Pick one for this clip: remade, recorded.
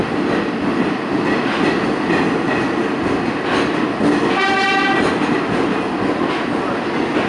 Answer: recorded